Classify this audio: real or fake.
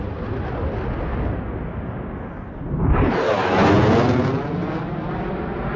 real